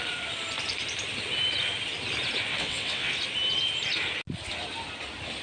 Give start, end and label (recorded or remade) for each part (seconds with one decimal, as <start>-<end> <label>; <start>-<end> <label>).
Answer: 0.0-2.5 recorded; 2.5-3.1 remade; 3.1-5.4 recorded